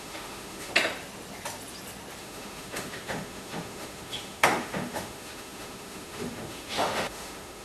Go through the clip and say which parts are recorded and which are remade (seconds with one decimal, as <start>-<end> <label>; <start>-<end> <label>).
0.0-0.7 remade; 0.7-2.2 recorded; 2.2-7.6 remade